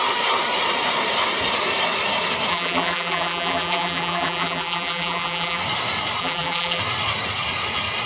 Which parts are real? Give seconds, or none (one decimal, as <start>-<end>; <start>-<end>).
0.0-2.5; 5.6-6.2; 6.8-8.1